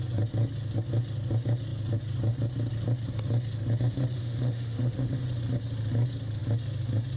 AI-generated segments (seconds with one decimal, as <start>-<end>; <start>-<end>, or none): 4.2-5.1